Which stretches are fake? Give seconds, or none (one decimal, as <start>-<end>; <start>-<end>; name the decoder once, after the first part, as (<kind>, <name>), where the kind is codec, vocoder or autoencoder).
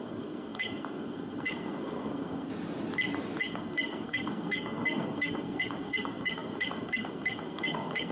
0.0-2.5 (codec, SNAC); 3.4-8.1